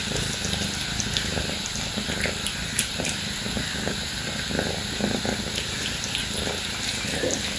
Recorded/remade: recorded